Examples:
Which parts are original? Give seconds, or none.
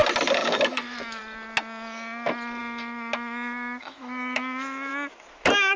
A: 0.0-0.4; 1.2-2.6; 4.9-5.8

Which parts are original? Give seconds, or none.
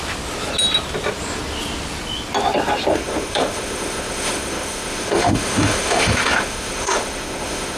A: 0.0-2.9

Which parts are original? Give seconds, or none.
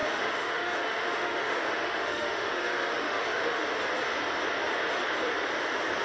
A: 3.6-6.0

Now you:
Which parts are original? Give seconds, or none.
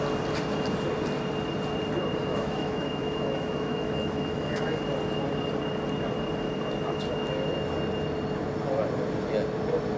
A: 0.0-2.3; 4.8-10.0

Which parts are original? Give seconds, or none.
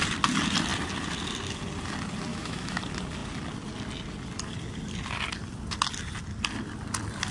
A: 0.0-2.3; 2.8-7.3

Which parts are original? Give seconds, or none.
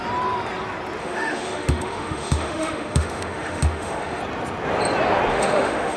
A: 0.0-1.0; 4.2-5.3